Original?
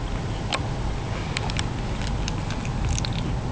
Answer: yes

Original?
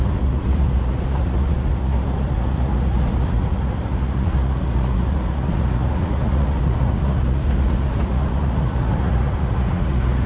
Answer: no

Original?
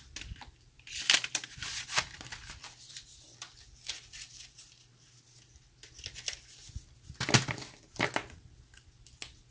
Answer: yes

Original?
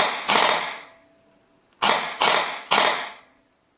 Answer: yes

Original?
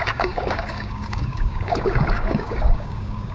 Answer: no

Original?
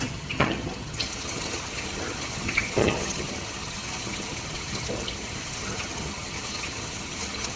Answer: no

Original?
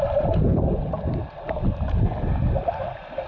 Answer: yes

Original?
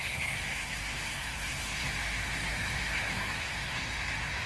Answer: no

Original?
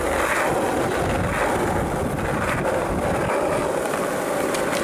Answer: yes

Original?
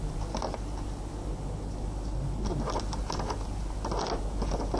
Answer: yes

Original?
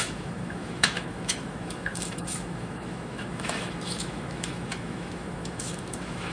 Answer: no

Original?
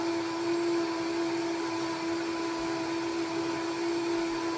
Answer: yes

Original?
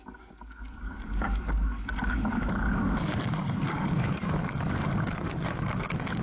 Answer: no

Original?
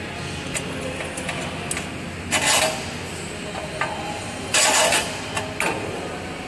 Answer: yes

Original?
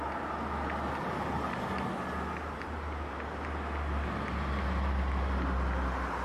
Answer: yes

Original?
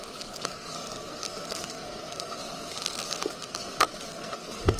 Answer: no